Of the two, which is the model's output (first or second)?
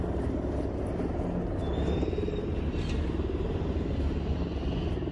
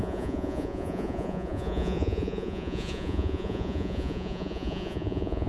second